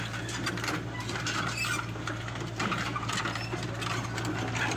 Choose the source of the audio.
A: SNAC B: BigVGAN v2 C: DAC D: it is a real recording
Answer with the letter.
D